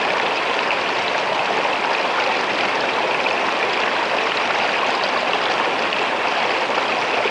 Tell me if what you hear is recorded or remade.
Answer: recorded